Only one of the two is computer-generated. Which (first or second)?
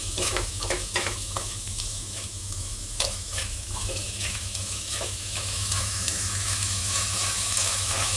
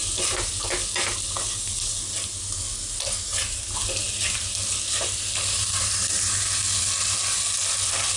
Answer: first